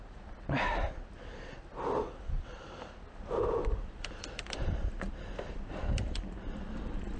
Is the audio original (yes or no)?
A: yes